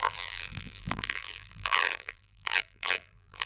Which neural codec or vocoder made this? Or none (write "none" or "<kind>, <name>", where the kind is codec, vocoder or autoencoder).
vocoder, BigVGAN v2